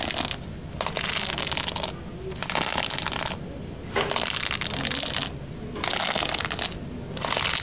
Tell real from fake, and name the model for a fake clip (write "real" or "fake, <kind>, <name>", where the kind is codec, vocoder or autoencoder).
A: real